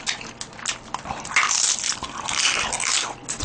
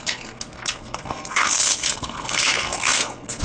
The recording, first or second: first